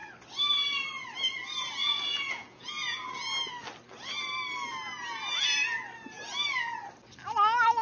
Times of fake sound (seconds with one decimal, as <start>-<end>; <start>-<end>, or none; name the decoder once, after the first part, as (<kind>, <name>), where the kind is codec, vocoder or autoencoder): 1.8-3.1 (vocoder, Vocos)